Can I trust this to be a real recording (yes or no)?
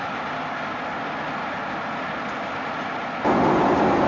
yes